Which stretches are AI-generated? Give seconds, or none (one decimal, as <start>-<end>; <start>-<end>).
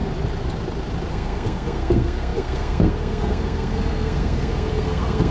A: 1.1-5.3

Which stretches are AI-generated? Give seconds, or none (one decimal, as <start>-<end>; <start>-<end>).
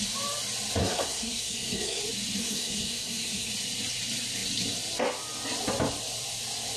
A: 0.8-2.0; 2.4-3.5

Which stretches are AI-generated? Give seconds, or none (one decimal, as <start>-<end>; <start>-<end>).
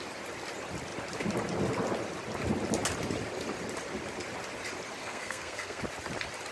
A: 5.0-5.8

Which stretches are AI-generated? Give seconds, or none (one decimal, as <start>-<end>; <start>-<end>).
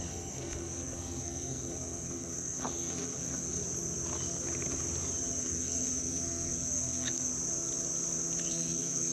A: 0.0-3.6; 5.4-7.3; 8.5-9.1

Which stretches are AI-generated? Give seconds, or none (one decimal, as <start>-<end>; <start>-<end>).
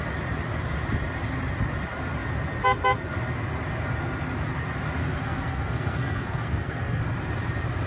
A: 5.0-7.0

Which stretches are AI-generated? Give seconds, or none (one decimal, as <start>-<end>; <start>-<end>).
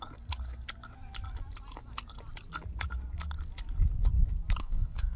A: 4.6-5.2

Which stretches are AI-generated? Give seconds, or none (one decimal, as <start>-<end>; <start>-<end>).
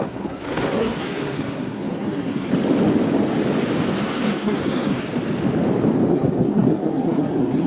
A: 0.0-2.5; 4.0-5.0; 6.1-7.7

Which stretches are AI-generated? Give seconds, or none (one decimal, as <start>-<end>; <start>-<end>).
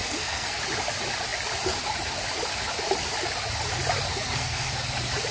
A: 0.0-0.6; 4.1-4.7